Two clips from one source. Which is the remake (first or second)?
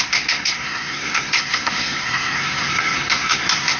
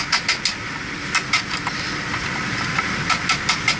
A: first